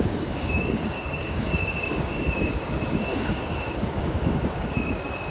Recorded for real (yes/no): no